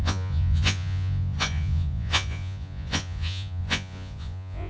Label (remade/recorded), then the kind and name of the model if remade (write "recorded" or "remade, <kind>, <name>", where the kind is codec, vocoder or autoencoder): remade, vocoder, Vocos